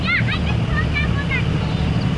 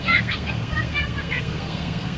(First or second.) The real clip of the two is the first